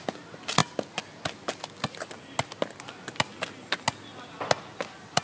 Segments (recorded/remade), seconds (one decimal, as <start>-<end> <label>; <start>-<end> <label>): 0.0-5.2 recorded